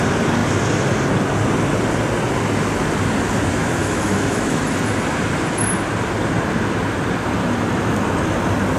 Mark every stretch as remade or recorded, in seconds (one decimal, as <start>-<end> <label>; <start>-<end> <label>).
0.0-3.6 recorded; 3.6-4.6 remade; 4.6-8.8 recorded